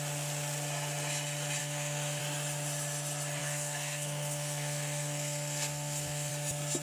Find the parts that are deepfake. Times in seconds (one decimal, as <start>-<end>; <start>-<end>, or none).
1.6-2.2; 3.4-6.3